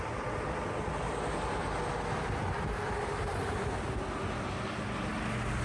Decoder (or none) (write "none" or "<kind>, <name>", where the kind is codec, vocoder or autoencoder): none